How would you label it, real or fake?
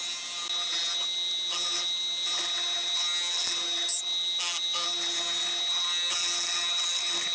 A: real